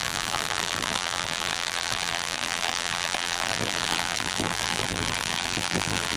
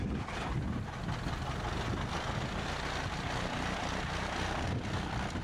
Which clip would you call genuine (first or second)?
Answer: second